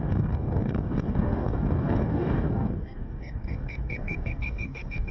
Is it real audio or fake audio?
fake